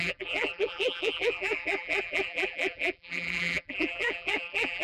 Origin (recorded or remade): remade